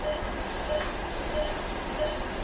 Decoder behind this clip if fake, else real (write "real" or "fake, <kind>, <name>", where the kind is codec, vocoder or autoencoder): real